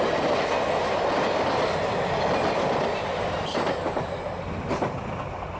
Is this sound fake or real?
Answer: real